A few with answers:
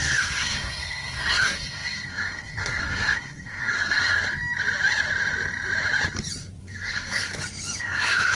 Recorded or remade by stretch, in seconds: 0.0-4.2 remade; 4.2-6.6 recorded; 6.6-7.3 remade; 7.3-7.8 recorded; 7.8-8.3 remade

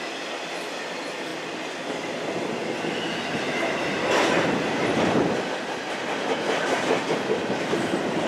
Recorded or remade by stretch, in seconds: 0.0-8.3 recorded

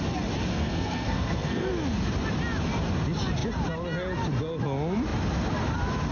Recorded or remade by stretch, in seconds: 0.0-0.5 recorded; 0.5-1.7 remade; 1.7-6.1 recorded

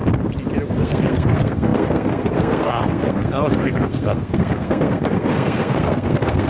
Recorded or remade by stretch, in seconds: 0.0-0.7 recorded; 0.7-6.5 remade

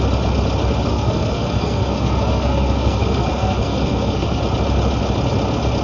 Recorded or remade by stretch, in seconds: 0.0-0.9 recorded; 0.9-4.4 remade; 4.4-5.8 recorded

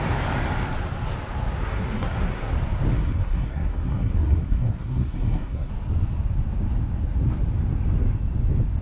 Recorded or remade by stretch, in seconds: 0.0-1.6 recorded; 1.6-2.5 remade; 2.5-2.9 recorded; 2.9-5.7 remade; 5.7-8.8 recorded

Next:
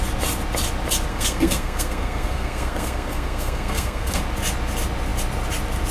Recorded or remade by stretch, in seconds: 0.0-1.1 recorded; 1.1-4.2 remade; 4.2-5.9 recorded